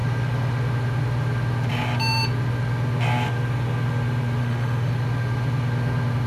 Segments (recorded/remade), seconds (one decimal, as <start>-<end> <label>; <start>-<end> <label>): 0.0-4.4 recorded; 4.4-4.9 remade; 4.9-6.3 recorded